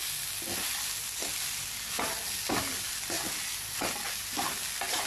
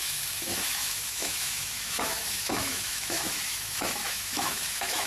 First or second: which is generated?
second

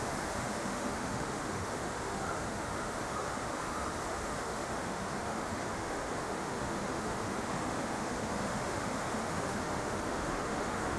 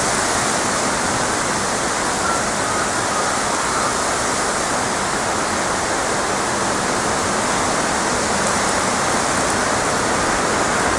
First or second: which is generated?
first